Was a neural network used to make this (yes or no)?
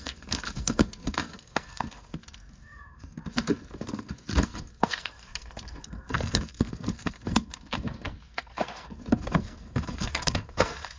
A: yes